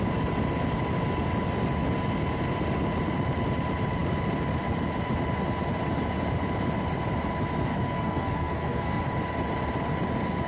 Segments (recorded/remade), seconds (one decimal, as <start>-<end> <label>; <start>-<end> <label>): 0.0-7.7 recorded; 7.7-9.0 remade; 9.0-10.5 recorded